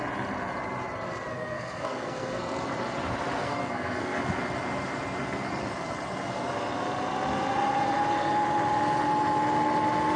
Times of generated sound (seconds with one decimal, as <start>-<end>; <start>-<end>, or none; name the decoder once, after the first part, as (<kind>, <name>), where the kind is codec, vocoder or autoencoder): 1.3-2.4 (codec, SNAC); 3.4-4.2